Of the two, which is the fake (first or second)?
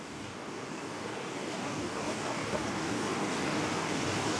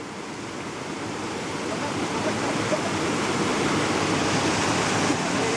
first